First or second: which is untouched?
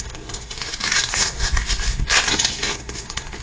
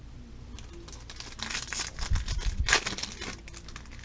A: second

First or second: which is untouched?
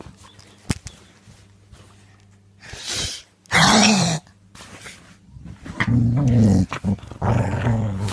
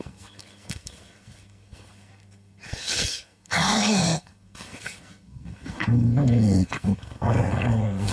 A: first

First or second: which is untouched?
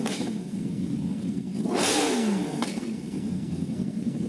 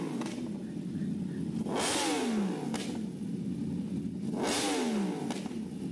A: second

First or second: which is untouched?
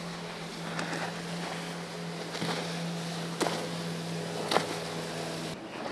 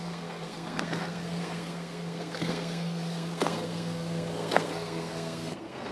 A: first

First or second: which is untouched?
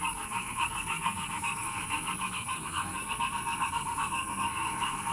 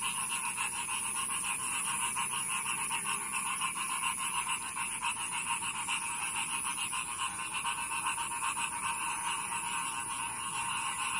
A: second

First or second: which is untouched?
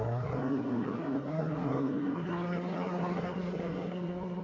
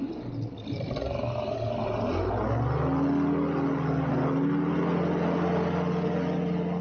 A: second